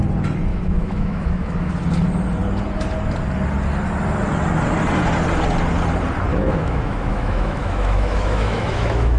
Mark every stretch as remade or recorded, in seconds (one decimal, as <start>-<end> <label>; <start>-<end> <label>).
0.0-0.5 recorded; 0.5-1.7 remade; 1.7-6.3 recorded; 6.3-9.2 remade

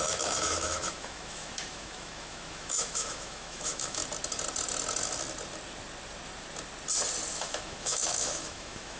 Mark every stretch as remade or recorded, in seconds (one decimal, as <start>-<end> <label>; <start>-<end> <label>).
0.0-4.0 remade; 4.0-7.3 recorded; 7.3-9.0 remade